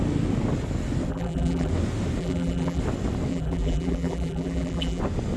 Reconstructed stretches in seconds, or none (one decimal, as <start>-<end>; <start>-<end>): 1.1-1.7; 2.2-2.8; 3.3-5.0